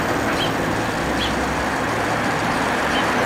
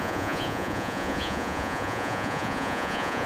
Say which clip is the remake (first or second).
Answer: second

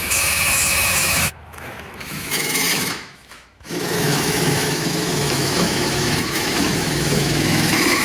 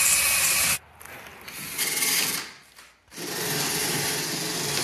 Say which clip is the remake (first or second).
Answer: first